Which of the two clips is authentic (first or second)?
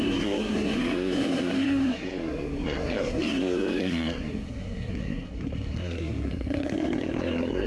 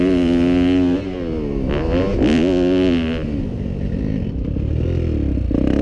second